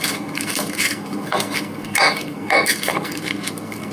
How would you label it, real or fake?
fake